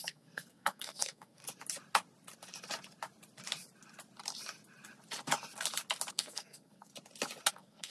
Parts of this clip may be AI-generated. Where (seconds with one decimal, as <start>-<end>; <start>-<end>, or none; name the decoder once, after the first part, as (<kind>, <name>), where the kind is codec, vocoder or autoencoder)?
0.0-1.4 (codec, SNAC); 6.1-6.9; 7.5-7.9